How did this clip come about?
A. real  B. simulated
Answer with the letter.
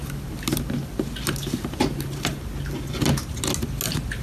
A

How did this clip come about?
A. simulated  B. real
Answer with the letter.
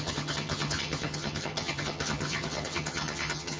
A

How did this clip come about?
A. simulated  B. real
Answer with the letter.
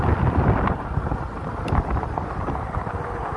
B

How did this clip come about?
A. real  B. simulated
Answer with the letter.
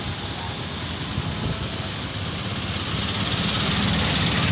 A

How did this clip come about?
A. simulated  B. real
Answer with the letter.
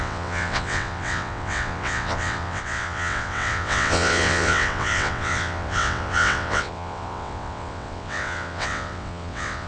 A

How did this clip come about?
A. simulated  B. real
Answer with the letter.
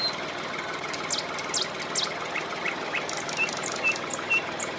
B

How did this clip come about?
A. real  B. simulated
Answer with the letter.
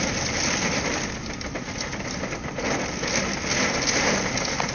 A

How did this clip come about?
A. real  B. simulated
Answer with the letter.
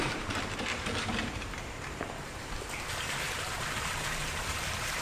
B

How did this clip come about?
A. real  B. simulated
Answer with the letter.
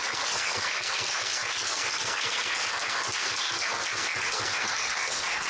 B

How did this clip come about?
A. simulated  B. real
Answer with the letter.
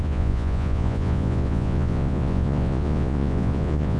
A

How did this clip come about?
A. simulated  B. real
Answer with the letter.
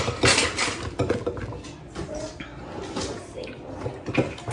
B